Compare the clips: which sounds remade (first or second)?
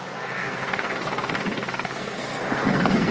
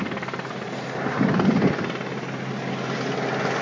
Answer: first